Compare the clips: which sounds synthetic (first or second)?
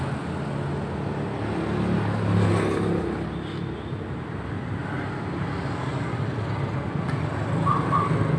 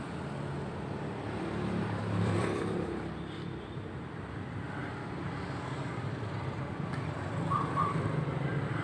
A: second